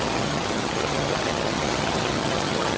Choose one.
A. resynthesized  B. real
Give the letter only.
A